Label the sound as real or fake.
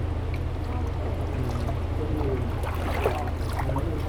real